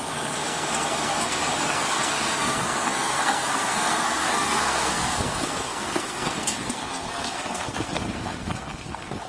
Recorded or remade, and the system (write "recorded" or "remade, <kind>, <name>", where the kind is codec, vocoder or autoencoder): remade, codec, SNAC